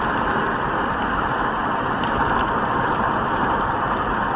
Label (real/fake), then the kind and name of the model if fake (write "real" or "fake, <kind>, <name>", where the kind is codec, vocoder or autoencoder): real